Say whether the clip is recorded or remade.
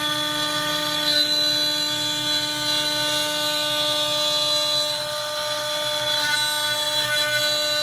recorded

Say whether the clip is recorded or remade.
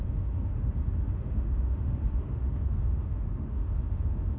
remade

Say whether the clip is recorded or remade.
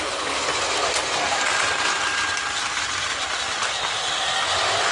recorded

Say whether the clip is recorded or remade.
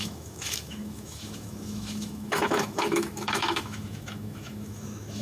remade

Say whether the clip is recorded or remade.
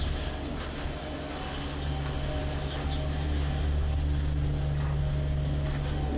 recorded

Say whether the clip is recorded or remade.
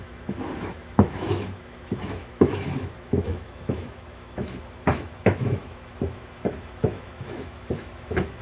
remade